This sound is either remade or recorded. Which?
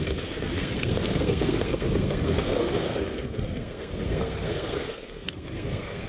remade